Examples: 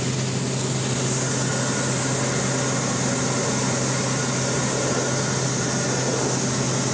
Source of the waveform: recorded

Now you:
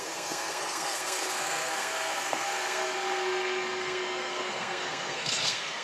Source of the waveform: remade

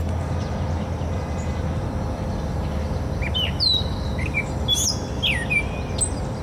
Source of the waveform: recorded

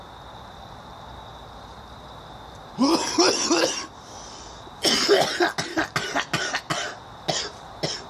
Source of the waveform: recorded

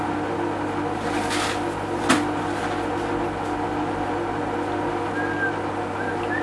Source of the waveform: recorded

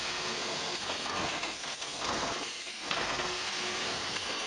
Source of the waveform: remade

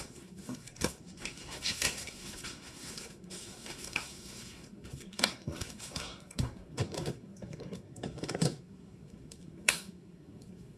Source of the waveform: remade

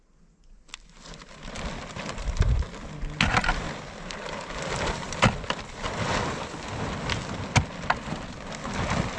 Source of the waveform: recorded